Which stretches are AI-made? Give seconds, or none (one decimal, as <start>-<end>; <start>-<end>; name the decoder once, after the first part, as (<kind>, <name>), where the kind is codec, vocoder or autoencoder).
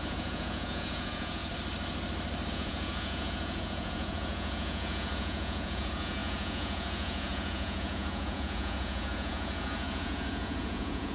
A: 0.0-1.4 (vocoder, Vocos); 2.5-11.1